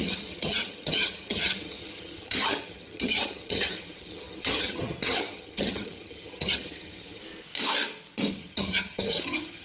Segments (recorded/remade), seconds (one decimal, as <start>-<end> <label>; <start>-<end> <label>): 0.0-7.2 remade; 7.2-8.3 recorded; 8.3-9.6 remade